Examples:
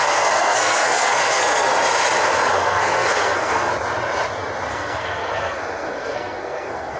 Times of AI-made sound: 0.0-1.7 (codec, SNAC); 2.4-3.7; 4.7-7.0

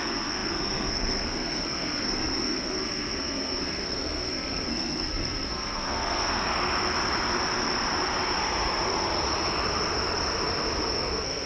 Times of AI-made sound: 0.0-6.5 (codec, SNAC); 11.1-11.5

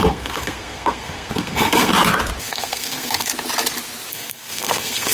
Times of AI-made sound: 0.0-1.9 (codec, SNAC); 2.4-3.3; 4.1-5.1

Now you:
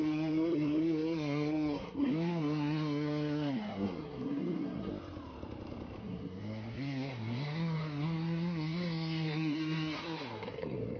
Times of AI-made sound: 0.0-4.9 (codec, SNAC); 6.0-11.0